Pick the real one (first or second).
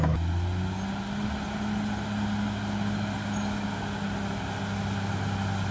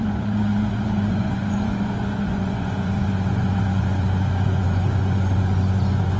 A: first